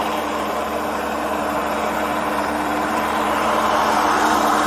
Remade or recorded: remade